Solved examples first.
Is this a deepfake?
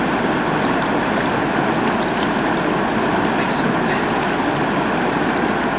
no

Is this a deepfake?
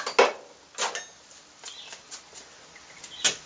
no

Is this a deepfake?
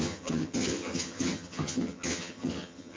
yes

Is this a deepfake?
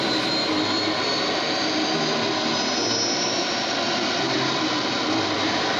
yes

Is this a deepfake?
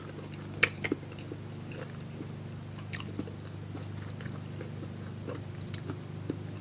no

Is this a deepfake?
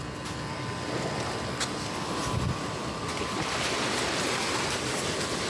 no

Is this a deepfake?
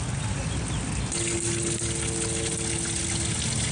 no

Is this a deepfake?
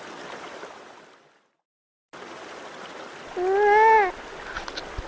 no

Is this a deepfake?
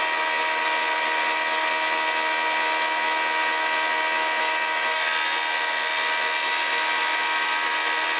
no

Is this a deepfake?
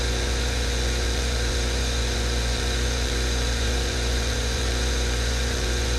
yes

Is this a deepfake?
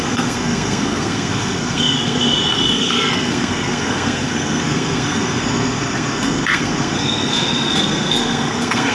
yes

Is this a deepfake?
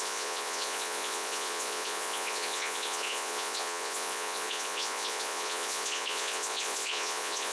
yes